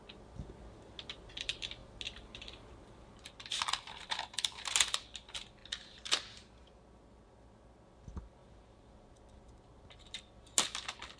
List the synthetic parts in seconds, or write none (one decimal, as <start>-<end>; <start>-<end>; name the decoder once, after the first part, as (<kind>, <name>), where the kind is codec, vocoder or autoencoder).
none